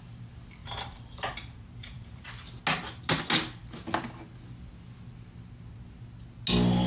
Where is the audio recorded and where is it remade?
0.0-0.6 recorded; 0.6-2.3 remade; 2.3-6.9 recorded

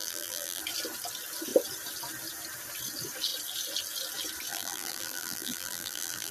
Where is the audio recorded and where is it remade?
0.0-0.6 remade; 0.6-4.5 recorded; 4.5-6.3 remade

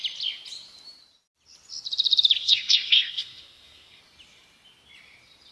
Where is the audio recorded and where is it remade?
0.0-2.4 recorded; 2.4-4.0 remade; 4.0-5.5 recorded

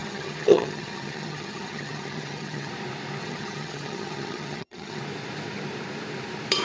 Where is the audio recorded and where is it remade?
0.0-2.7 remade; 2.7-3.2 recorded; 3.2-5.0 remade; 5.0-6.6 recorded

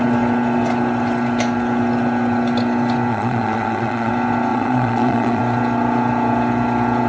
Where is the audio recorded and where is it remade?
0.0-3.1 recorded; 3.1-4.1 remade; 4.1-4.5 recorded; 4.5-5.4 remade; 5.4-7.1 recorded

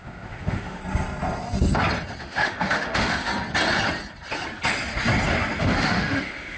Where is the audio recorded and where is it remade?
0.0-0.8 remade; 0.8-2.2 recorded; 2.2-3.3 remade; 3.3-5.6 recorded; 5.6-6.6 remade